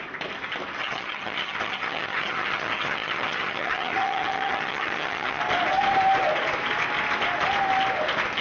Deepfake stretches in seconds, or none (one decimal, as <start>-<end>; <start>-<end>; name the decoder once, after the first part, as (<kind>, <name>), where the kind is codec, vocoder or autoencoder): 0.8-5.4 (vocoder, HiFi-GAN)